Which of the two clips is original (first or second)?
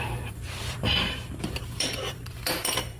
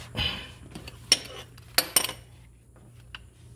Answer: second